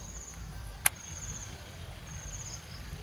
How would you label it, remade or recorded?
recorded